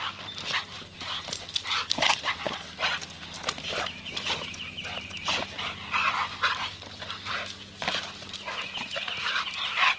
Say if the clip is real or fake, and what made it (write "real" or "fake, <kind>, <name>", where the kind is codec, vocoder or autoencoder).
real